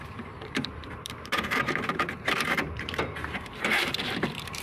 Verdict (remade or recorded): remade